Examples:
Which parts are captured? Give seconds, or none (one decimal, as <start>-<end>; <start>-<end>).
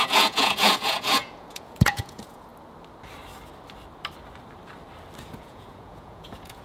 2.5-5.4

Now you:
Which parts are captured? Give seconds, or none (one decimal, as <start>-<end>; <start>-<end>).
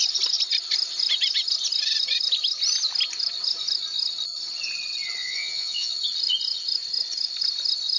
0.0-5.2; 5.9-8.0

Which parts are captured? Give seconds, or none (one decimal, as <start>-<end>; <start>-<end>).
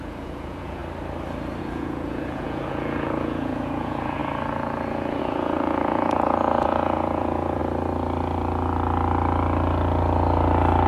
0.8-1.6; 7.6-10.9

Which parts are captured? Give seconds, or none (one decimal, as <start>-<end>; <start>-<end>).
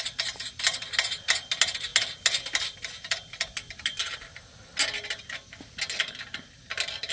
0.0-7.1